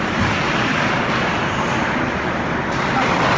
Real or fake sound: real